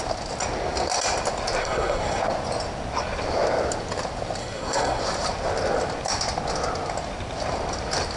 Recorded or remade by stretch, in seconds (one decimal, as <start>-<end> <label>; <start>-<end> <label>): 0.0-1.6 recorded; 1.6-2.2 remade; 2.2-4.4 recorded; 4.4-5.0 remade; 5.0-8.2 recorded

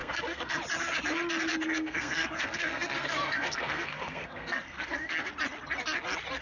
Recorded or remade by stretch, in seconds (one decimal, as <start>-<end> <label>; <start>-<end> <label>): 0.0-0.6 remade; 0.6-1.5 recorded; 1.5-5.3 remade; 5.3-6.4 recorded

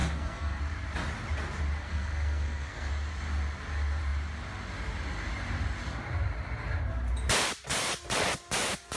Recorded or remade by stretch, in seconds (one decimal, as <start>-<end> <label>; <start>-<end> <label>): 0.0-0.6 remade; 0.6-1.8 recorded; 1.8-2.9 remade; 2.9-9.0 recorded